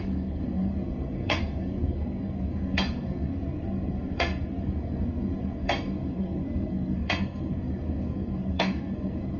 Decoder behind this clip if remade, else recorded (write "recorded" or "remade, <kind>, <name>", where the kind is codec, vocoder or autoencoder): remade, codec, SNAC